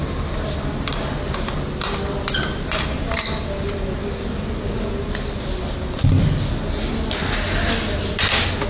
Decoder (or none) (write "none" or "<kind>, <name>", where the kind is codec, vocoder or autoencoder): none